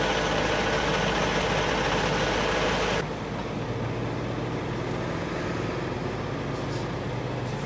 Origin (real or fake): real